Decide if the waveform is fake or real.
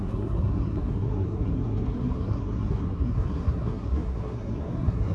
fake